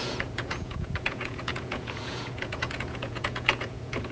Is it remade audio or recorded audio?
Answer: remade